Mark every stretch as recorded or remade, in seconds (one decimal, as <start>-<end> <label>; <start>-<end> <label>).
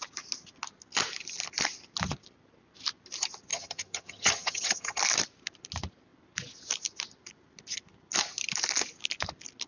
0.0-3.5 recorded; 3.5-5.0 remade; 5.0-9.7 recorded